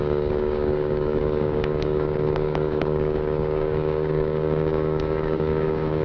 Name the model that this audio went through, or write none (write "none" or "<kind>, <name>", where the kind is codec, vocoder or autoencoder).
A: codec, DAC